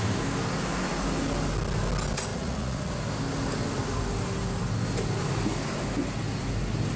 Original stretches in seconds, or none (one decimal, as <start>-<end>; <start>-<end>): 0.0-2.3; 2.9-7.0